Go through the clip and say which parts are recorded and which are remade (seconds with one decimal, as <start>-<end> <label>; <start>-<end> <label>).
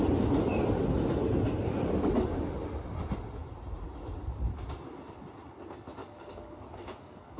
0.0-6.0 recorded; 6.0-7.4 remade